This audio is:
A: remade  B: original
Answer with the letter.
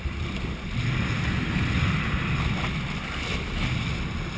B